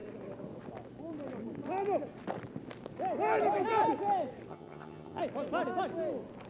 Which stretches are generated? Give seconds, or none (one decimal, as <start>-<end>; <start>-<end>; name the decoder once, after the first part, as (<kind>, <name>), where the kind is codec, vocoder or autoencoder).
4.5-5.2 (vocoder, HiFi-GAN)